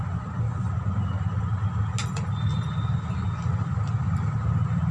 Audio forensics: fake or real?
real